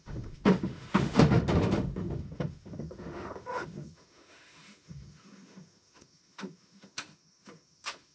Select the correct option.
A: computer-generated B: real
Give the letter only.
A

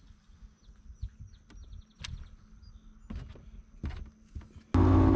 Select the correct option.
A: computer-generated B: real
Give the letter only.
B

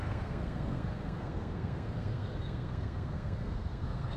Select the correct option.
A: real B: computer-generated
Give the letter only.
B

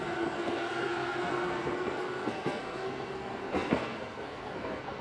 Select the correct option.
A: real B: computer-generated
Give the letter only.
B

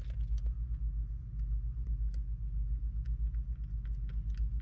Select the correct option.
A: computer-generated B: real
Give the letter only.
B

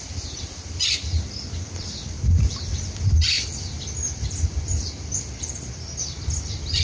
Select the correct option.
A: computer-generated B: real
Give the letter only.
A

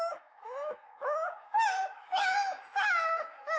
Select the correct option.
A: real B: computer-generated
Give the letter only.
B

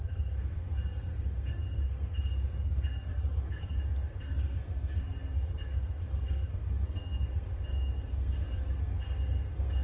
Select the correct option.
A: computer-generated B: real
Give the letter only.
A